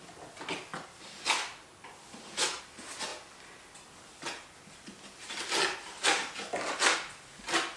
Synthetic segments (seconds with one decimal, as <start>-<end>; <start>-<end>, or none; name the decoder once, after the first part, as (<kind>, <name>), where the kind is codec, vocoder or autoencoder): none